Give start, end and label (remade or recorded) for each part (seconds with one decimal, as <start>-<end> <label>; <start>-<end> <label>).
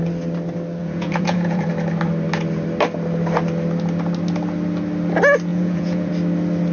0.0-0.8 recorded; 0.8-1.7 remade; 1.7-5.5 recorded; 5.5-6.1 remade; 6.1-6.7 recorded